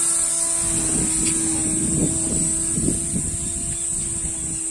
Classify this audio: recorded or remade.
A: recorded